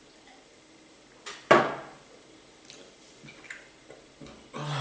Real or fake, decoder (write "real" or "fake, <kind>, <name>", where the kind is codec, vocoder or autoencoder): real